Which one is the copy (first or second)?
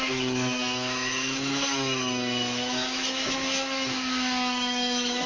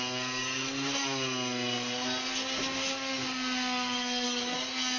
first